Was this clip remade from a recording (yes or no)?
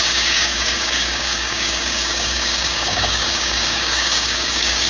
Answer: yes